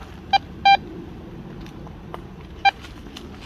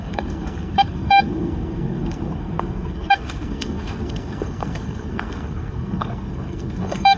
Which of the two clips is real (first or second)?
first